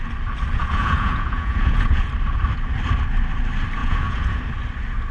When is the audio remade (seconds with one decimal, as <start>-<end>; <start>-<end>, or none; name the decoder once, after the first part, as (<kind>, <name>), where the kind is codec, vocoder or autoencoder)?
0.6-2.1 (vocoder, Vocos); 3.8-4.4